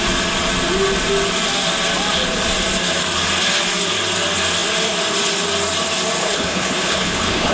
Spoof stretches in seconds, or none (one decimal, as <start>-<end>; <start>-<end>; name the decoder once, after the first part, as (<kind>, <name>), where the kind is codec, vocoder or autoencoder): 6.2-7.5 (codec, HILCodec)